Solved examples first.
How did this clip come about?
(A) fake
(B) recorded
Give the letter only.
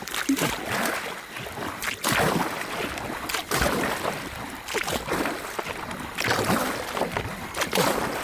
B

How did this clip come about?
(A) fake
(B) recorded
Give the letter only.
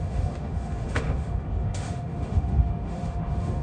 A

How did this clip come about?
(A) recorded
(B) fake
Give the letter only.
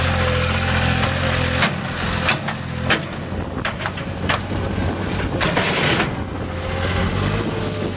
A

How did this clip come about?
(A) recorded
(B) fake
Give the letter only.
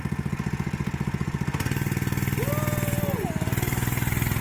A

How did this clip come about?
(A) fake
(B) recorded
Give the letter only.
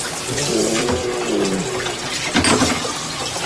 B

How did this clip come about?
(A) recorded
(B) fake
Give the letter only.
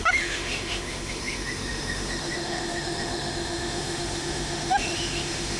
B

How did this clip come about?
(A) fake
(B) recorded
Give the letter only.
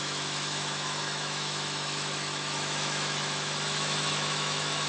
A